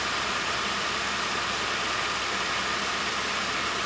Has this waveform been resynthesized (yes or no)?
yes